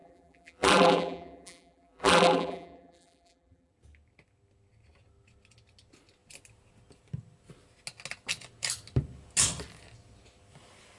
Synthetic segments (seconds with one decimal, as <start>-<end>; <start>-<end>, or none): 0.0-3.7